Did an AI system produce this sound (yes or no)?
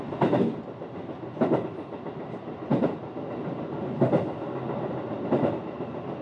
no